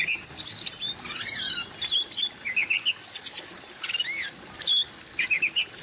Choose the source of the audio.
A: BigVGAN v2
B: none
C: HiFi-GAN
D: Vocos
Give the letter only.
B